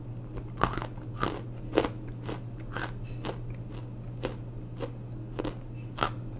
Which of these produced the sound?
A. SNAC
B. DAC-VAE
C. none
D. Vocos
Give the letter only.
C